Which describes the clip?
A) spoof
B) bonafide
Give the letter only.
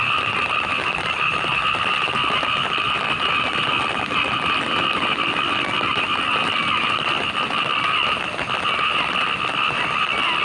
B